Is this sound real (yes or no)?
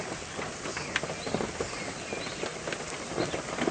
yes